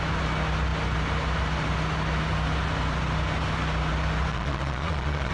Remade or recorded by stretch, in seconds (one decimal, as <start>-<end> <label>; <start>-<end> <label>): 0.0-4.3 recorded; 4.3-5.3 remade